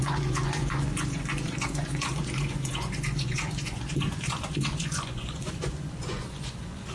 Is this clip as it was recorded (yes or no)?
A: no